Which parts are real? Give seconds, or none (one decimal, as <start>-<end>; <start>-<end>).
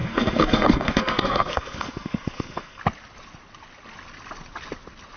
2.8-5.2